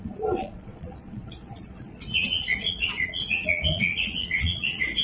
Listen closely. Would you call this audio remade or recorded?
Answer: remade